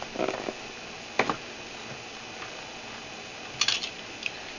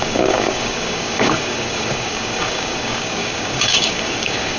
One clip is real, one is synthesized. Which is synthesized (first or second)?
second